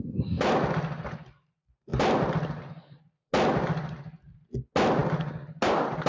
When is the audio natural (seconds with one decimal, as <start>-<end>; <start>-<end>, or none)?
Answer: 0.0-6.1